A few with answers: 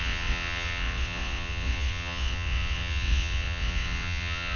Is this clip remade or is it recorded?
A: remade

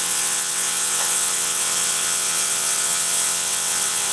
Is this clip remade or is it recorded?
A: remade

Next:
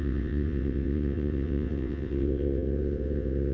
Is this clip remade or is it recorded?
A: remade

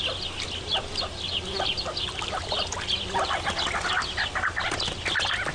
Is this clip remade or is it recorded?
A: recorded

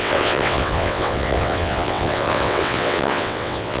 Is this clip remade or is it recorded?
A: remade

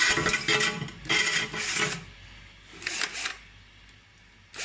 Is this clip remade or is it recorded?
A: recorded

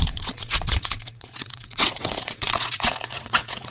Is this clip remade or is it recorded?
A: remade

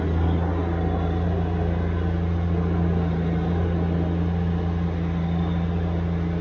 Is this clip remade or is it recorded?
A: recorded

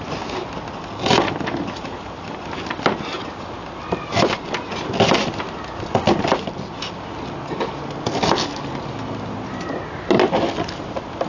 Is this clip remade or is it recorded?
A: recorded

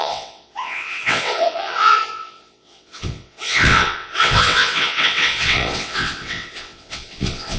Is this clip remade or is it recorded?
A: remade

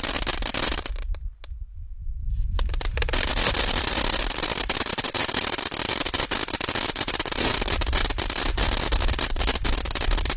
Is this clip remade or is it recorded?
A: recorded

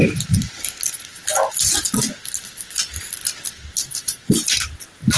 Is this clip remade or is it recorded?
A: recorded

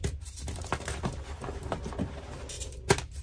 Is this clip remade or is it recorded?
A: recorded